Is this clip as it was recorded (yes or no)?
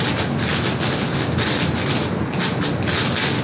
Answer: yes